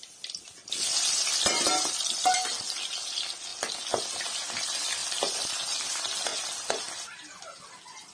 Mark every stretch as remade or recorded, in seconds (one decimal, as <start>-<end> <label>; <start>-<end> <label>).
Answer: 0.0-8.1 recorded